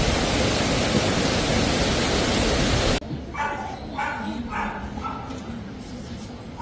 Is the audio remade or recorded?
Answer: recorded